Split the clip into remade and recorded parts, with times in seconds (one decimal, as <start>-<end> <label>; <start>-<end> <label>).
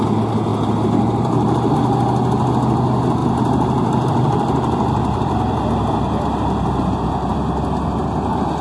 0.0-0.5 recorded; 0.5-1.7 remade; 1.7-3.2 recorded; 3.2-5.6 remade; 5.6-8.6 recorded